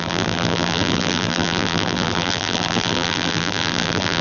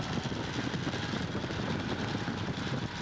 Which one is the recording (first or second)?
second